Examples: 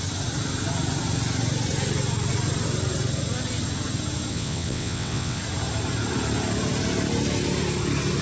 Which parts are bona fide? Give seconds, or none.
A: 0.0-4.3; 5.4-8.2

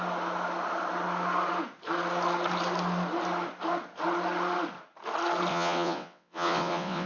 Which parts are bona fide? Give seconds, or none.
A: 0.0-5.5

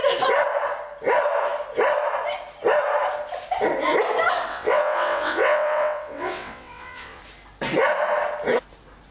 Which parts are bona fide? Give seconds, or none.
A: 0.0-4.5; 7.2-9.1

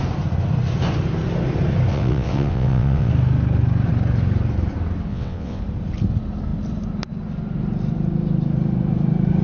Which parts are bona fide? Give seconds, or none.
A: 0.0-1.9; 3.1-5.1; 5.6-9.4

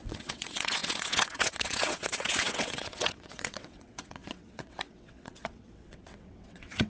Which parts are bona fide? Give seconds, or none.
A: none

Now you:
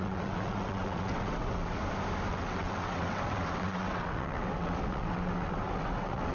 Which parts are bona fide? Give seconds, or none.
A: 1.8-2.3